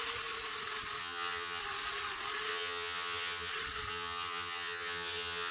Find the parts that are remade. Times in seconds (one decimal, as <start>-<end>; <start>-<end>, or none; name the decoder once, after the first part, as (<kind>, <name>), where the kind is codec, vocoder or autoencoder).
1.0-1.6 (vocoder, HiFi-GAN); 2.5-3.5; 3.9-5.5